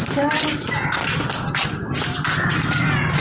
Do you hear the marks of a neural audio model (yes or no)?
no